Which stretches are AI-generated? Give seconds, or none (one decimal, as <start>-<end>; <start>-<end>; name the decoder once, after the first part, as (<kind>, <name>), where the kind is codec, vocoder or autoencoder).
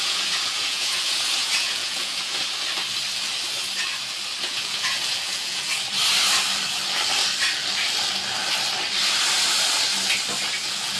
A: 0.0-2.4 (vocoder, Vocos); 4.4-5.7; 10.6-11.0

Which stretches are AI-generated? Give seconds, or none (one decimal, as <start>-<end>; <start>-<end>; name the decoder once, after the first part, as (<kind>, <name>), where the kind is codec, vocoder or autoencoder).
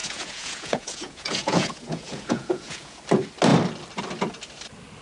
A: 0.0-3.0 (vocoder, Vocos)